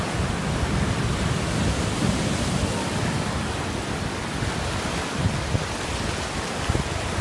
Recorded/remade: recorded